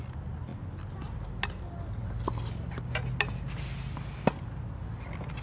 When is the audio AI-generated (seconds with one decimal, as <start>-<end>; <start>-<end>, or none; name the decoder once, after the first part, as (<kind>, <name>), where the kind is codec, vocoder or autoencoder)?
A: none